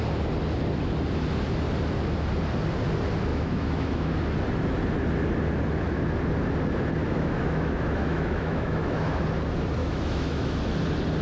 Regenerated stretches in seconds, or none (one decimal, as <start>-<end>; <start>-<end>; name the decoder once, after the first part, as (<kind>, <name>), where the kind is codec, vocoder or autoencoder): 3.3-4.1 (autoencoder, DAC-VAE); 7.0-9.2; 9.8-10.6